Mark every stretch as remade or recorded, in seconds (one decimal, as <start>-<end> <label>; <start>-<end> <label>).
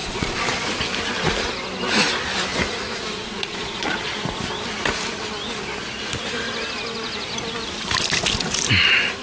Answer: 0.0-0.8 remade; 0.8-3.2 recorded; 3.2-4.1 remade; 4.1-9.2 recorded